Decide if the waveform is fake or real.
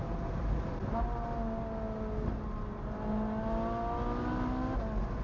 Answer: real